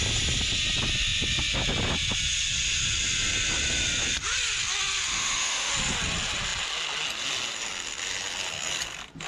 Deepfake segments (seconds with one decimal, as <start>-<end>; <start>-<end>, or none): 5.1-5.7